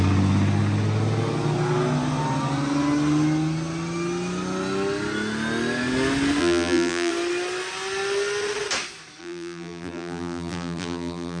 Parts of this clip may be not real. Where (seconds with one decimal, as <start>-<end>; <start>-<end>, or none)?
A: 6.4-7.1; 9.2-11.4